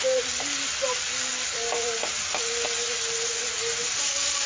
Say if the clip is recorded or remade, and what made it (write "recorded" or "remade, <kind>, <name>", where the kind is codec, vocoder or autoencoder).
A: recorded